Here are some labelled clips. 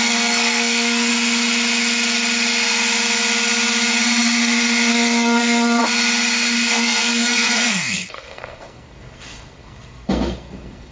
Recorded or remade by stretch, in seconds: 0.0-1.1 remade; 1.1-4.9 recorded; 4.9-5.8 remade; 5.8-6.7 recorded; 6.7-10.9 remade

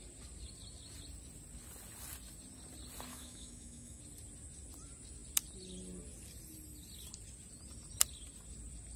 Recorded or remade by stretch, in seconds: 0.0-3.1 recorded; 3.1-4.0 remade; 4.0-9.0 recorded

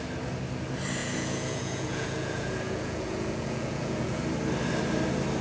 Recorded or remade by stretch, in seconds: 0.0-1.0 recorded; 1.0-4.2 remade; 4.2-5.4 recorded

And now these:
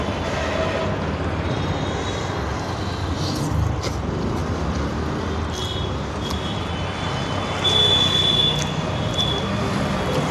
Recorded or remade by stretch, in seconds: 0.0-10.3 recorded